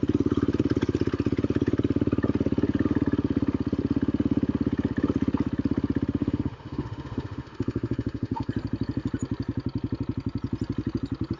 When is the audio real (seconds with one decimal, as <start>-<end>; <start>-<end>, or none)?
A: 0.0-6.2; 8.5-11.4